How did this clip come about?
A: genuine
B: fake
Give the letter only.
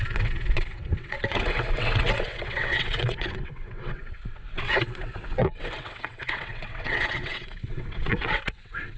B